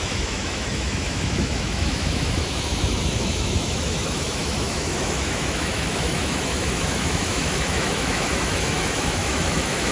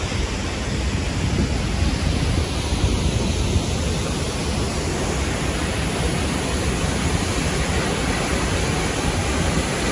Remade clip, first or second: first